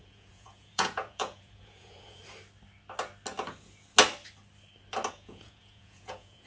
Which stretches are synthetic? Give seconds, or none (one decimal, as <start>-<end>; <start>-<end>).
0.0-2.2; 5.1-6.5